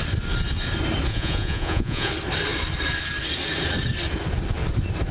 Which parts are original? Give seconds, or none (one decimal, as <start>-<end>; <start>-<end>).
0.0-1.1; 2.1-5.1